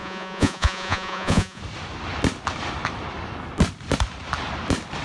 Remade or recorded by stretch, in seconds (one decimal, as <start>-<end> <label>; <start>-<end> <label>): 0.0-1.6 remade; 1.6-5.0 recorded